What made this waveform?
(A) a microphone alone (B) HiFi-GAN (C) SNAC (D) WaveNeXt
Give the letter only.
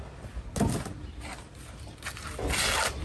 A